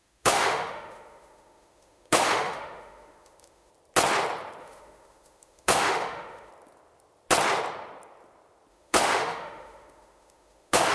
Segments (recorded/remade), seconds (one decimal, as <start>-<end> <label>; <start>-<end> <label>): 0.0-3.7 remade; 3.7-4.6 recorded; 4.6-6.5 remade; 6.5-8.7 recorded; 8.7-10.9 remade